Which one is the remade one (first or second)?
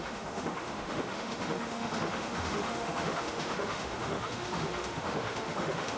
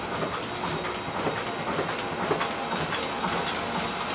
first